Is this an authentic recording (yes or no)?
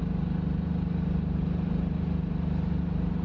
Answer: yes